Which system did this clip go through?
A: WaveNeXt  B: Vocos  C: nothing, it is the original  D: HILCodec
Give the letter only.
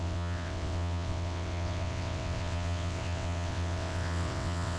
A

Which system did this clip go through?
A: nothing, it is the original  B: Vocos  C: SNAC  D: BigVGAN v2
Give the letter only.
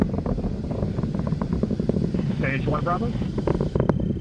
A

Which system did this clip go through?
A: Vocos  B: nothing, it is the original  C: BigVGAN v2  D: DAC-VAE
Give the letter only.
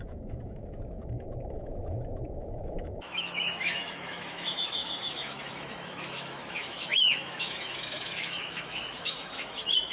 D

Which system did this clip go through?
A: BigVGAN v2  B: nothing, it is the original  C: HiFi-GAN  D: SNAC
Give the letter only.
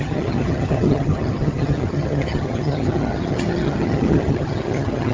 C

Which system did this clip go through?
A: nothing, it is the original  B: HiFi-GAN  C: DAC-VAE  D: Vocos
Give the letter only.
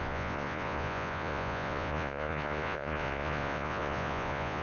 D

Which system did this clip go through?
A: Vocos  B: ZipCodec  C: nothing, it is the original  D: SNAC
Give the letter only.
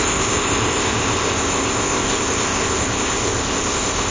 B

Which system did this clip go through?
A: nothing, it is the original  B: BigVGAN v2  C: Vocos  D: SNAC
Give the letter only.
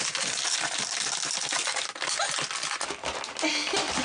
A